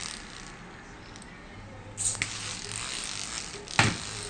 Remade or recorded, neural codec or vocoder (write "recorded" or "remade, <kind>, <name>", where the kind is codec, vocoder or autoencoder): recorded